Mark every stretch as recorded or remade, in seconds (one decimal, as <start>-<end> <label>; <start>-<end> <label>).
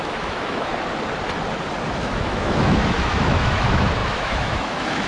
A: 0.0-0.7 remade; 0.7-1.9 recorded; 1.9-5.1 remade